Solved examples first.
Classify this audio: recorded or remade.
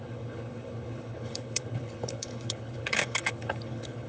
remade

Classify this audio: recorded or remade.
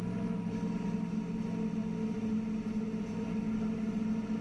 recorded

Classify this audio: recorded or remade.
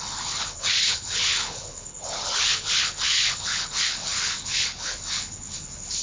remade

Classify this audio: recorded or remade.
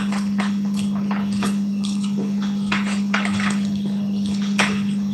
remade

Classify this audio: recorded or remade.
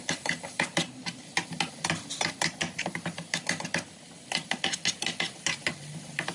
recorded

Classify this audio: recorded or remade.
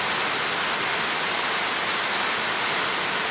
recorded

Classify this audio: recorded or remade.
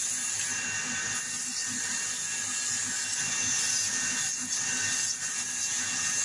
recorded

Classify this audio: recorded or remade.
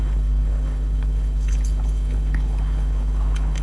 remade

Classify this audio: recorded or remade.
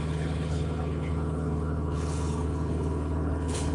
remade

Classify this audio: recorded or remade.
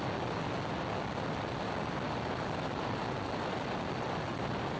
recorded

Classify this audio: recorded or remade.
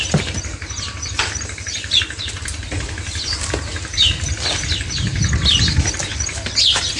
recorded